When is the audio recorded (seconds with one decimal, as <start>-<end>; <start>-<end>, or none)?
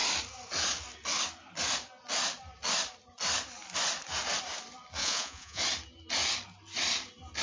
0.0-5.0; 5.6-7.4